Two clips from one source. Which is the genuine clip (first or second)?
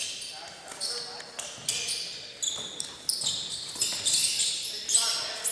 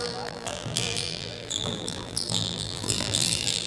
first